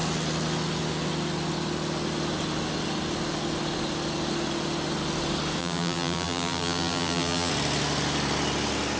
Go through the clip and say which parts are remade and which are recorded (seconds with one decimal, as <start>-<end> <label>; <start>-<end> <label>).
0.0-5.6 recorded; 5.6-7.5 remade; 7.5-9.0 recorded